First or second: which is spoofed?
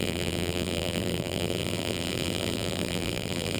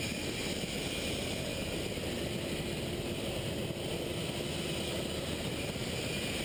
first